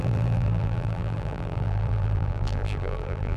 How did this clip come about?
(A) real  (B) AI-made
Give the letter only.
B